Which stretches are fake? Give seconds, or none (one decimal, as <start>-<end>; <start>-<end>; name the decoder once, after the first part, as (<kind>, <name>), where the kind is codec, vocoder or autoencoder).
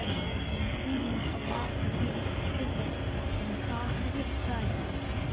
0.0-1.7 (codec, SNAC)